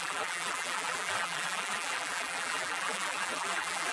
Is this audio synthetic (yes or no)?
yes